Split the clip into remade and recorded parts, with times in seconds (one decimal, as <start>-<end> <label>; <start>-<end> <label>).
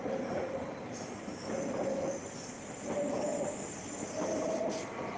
0.0-5.2 recorded